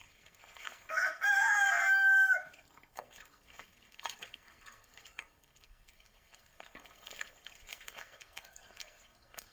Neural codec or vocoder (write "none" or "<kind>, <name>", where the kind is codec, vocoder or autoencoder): codec, SNAC